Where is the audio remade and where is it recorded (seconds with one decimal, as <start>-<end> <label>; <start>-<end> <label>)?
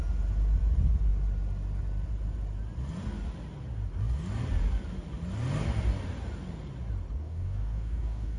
0.0-7.2 recorded; 7.2-8.4 remade